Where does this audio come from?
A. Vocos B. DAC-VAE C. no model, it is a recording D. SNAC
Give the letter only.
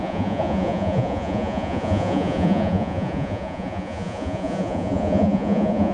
A